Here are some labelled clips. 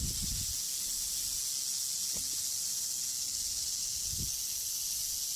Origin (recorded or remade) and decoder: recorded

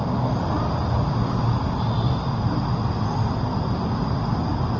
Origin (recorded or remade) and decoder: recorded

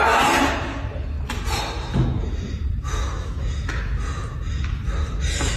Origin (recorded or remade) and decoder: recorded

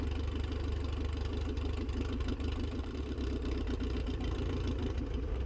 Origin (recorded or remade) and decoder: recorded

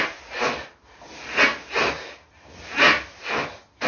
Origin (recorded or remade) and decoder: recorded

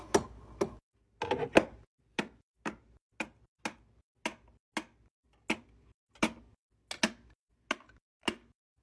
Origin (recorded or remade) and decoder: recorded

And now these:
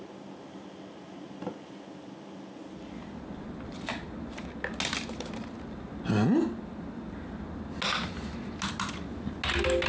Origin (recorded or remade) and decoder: recorded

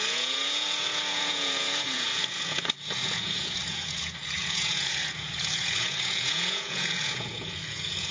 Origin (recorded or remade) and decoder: remade, vocoder, Vocos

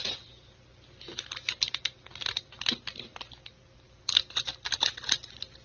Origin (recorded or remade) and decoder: recorded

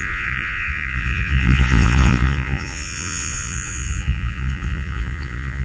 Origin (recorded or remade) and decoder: remade, vocoder, Vocos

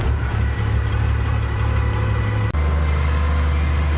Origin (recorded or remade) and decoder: recorded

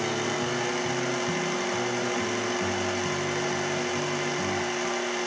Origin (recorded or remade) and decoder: recorded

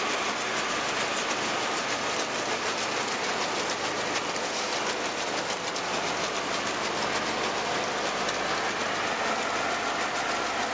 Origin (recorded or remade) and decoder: recorded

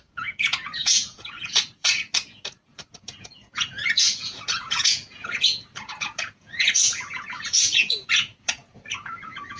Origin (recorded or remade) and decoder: remade, vocoder, Vocos